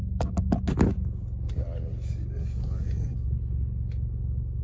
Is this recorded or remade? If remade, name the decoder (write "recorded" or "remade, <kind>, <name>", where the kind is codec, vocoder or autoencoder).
recorded